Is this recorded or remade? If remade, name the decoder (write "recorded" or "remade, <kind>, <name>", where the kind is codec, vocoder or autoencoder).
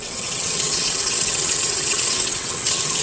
remade, vocoder, WaveNeXt